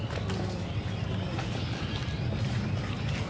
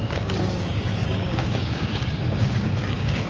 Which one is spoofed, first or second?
second